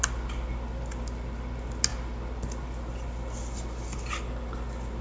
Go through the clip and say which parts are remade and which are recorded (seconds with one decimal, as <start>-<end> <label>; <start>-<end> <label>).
0.0-5.0 recorded